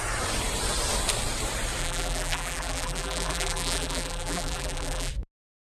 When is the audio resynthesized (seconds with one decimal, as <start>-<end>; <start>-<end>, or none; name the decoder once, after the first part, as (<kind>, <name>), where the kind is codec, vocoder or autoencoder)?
1.8-5.1 (vocoder, BigVGAN v2)